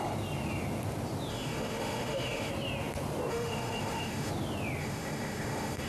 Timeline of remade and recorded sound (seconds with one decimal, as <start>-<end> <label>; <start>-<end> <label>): 0.0-1.3 recorded; 1.3-2.5 remade; 2.5-3.3 recorded; 3.3-4.3 remade; 4.3-4.8 recorded; 4.8-5.9 remade